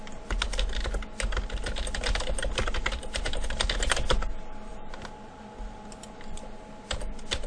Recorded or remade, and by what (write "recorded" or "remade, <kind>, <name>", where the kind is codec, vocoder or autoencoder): recorded